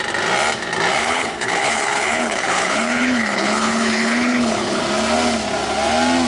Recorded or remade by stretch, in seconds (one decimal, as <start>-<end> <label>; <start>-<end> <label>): 0.0-1.0 recorded; 1.0-4.8 remade; 4.8-6.3 recorded